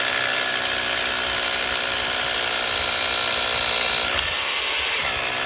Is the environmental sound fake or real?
real